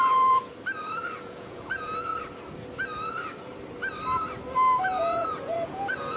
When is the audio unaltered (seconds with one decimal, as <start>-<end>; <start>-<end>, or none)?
0.4-1.2; 2.1-4.8

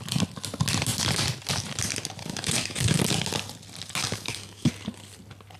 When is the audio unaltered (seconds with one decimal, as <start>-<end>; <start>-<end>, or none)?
0.0-2.2; 3.0-4.0; 4.7-5.6